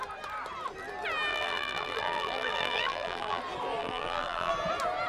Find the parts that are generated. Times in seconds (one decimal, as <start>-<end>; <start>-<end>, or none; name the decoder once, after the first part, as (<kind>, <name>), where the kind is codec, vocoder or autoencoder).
1.3-3.4 (vocoder, BigVGAN v2); 3.8-4.5